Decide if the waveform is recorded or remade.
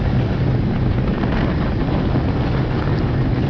recorded